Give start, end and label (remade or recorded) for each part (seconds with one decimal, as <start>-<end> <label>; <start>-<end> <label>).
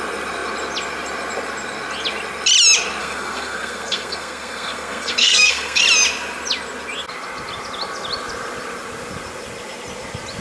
0.0-3.0 recorded; 3.0-5.8 remade; 5.8-10.4 recorded